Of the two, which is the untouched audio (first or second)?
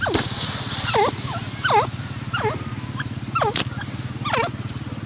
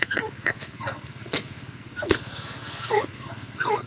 first